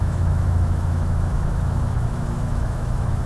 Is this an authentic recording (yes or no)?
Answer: no